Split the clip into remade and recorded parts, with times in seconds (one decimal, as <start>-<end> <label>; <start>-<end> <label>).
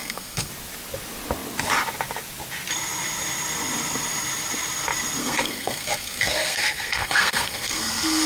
0.0-0.5 remade; 0.5-5.2 recorded; 5.2-8.3 remade